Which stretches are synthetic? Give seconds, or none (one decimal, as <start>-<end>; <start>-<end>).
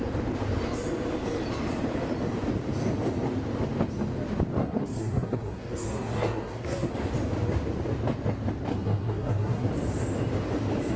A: 4.6-6.9; 8.7-9.7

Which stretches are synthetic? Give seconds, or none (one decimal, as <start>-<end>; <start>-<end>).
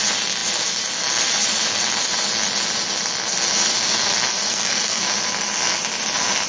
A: 4.5-5.0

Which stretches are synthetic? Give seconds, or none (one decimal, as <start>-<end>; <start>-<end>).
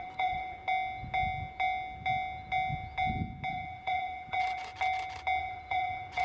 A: 0.0-0.6; 3.5-4.7; 5.4-6.2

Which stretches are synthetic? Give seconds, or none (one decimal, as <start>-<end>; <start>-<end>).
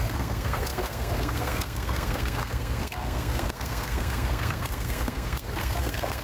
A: 0.0-6.2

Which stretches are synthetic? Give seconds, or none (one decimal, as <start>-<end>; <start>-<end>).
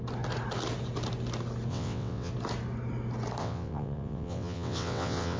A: 1.7-2.3; 3.4-5.4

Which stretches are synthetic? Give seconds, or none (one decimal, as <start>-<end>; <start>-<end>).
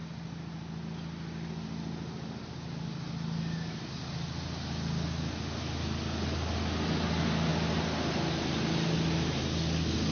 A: none